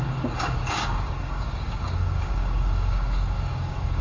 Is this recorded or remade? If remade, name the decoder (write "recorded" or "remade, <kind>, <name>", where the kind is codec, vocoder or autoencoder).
remade, codec, DAC